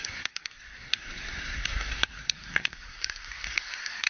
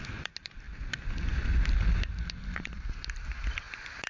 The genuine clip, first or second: second